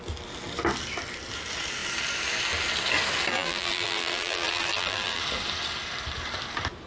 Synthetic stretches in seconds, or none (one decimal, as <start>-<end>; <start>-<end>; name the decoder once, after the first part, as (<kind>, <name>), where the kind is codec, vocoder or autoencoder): 3.3-5.2 (vocoder, BigVGAN v2)